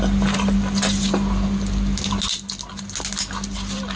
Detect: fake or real real